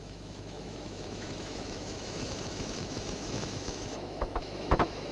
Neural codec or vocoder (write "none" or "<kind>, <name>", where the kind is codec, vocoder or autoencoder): autoencoder, DAC-VAE